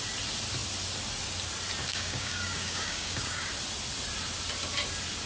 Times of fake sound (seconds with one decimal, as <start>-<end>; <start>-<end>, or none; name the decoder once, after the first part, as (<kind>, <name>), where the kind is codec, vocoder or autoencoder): 1.8-3.5 (codec, DAC)